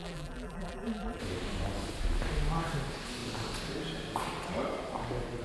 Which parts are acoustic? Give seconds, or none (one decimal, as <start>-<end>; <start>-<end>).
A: 1.2-5.4